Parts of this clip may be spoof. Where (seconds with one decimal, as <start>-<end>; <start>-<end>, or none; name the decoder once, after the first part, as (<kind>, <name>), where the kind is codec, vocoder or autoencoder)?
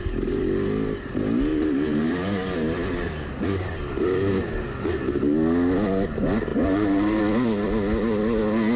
1.5-4.4 (vocoder, BigVGAN v2); 6.5-7.2